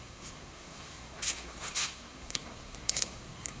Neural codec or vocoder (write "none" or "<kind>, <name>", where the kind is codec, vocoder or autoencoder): codec, SNAC